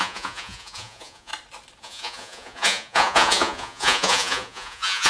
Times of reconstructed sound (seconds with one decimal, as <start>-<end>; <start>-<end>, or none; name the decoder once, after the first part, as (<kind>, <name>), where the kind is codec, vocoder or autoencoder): 0.0-1.3 (vocoder, Vocos); 1.8-5.1